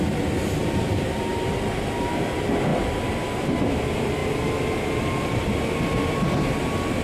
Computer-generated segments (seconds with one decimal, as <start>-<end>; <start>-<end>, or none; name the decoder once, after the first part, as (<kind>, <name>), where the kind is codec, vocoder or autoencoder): 2.7-3.5 (vocoder, BigVGAN v2)